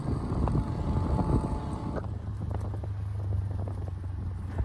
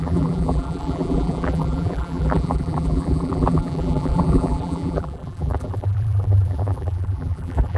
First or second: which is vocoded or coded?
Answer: second